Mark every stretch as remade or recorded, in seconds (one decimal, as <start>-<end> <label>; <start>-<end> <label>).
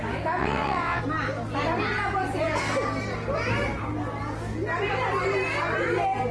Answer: 0.0-0.4 recorded; 0.4-1.0 remade; 1.0-6.3 recorded